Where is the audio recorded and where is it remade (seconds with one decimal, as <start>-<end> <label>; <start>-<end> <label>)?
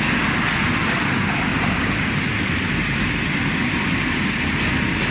0.0-1.5 recorded; 1.5-2.1 remade; 2.1-5.1 recorded